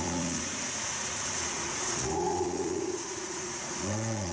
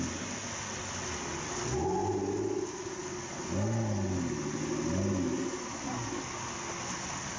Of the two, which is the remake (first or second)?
first